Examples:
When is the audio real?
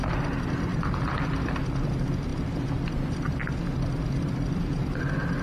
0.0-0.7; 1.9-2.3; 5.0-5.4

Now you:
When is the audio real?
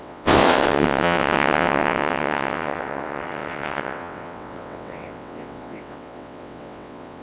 none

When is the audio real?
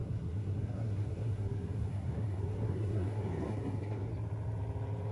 4.1-5.1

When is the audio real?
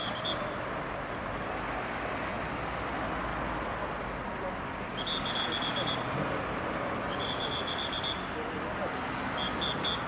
0.0-10.1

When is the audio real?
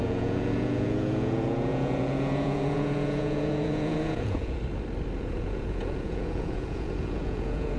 4.6-5.2